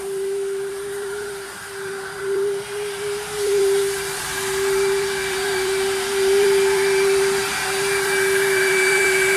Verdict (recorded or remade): remade